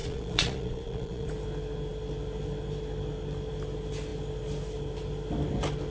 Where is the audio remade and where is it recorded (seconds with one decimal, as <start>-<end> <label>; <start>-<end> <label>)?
0.0-1.3 remade; 1.3-5.9 recorded